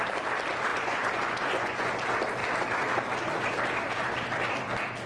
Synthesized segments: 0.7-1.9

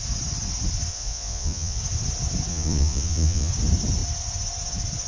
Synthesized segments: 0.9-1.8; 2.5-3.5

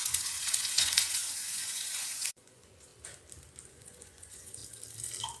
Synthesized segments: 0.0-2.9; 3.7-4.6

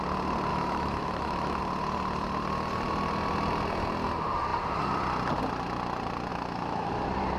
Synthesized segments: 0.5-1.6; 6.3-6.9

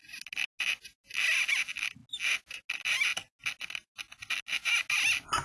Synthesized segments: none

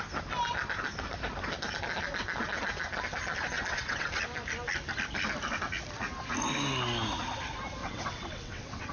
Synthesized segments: 3.7-4.2; 7.8-8.9